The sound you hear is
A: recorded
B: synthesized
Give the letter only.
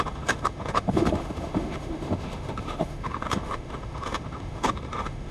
B